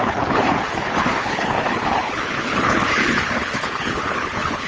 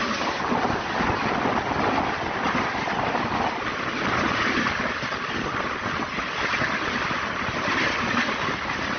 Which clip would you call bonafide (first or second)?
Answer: second